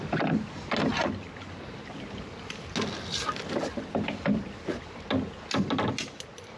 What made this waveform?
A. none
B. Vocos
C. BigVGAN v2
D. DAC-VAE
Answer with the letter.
A